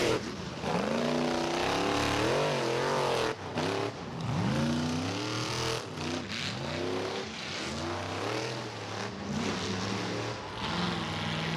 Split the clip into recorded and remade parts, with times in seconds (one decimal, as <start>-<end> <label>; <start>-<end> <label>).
0.0-0.7 remade; 0.7-11.6 recorded